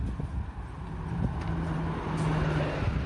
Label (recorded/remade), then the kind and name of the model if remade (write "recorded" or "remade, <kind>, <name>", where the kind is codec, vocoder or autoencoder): recorded